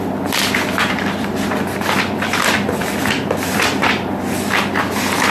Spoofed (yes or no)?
no